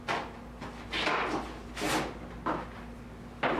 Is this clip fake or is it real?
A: real